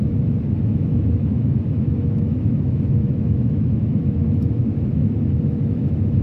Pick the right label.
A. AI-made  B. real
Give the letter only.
A